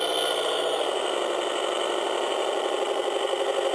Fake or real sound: real